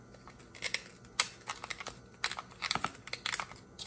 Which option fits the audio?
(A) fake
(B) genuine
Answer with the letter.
B